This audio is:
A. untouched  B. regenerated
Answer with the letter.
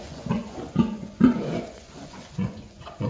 B